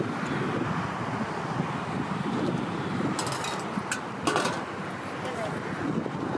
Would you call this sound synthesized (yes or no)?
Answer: no